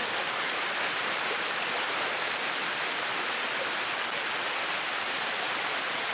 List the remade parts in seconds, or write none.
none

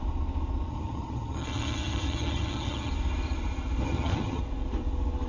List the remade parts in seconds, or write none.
0.7-2.9 (vocoder, HiFi-GAN); 3.8-4.4